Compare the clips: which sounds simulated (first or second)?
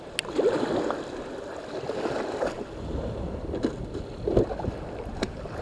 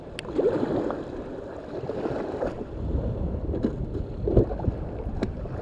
second